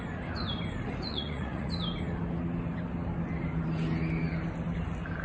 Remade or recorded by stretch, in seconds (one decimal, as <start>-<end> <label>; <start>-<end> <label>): 0.0-1.1 recorded; 1.1-1.7 remade; 1.7-5.2 recorded